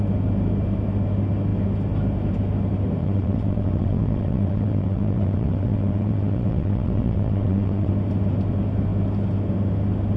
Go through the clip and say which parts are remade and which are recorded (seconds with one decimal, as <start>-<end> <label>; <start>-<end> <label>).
0.0-3.0 recorded; 3.0-7.9 remade; 7.9-10.2 recorded